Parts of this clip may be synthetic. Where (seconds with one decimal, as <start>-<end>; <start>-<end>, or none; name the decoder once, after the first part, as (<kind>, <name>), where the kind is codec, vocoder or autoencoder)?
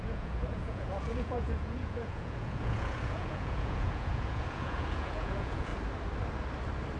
0.0-5.7 (vocoder, Vocos)